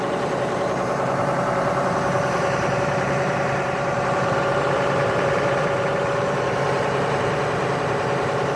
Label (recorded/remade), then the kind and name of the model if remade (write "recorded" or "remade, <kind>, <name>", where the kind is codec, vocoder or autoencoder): remade, vocoder, BigVGAN v2